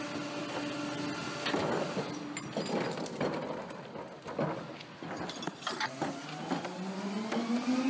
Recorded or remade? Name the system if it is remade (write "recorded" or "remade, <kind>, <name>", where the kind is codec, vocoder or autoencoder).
recorded